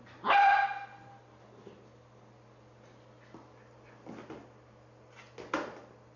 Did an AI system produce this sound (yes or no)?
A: no